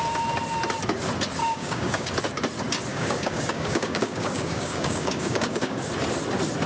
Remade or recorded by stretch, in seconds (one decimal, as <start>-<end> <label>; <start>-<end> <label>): 0.0-1.4 recorded; 1.4-2.1 remade; 2.1-2.9 recorded; 2.9-5.8 remade; 5.8-6.7 recorded